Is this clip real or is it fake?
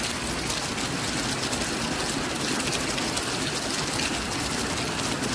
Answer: real